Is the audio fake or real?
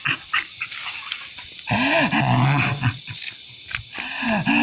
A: real